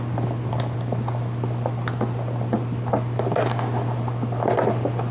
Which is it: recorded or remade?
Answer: recorded